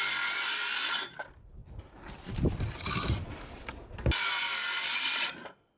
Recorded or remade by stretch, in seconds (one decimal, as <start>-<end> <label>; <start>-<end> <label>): 0.0-5.8 recorded